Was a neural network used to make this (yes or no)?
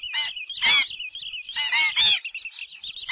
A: no